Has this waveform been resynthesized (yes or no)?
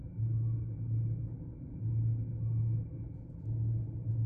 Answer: no